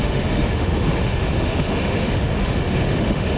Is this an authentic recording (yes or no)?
no